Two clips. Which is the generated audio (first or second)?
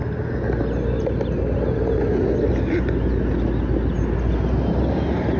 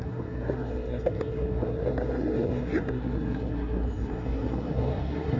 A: second